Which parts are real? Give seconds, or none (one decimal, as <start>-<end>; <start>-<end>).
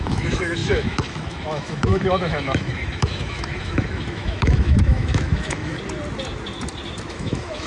5.7-7.1